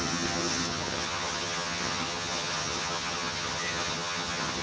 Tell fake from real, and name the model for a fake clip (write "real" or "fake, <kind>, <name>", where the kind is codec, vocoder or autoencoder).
fake, vocoder, HiFi-GAN